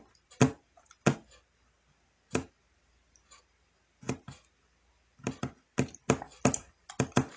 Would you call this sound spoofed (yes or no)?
no